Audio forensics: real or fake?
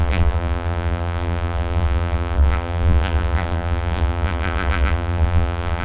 fake